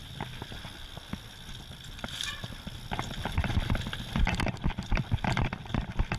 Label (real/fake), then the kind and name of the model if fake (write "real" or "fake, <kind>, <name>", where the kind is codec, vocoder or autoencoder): real